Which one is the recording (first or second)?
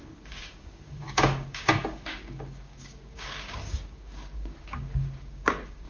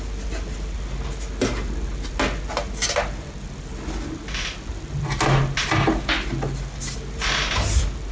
second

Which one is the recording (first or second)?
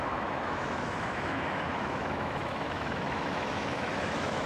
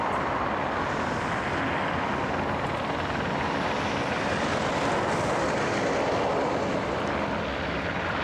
second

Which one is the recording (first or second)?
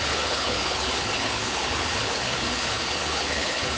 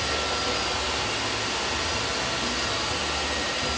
second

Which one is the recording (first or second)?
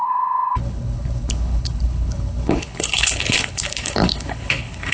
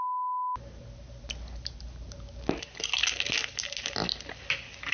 second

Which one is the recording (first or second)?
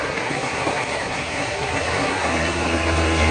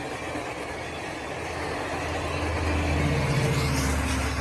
second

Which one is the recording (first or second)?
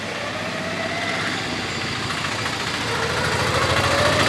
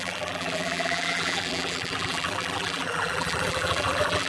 first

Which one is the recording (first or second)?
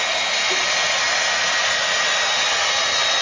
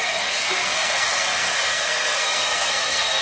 first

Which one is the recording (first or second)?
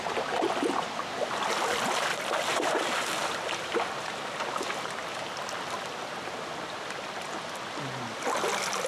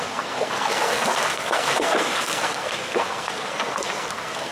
first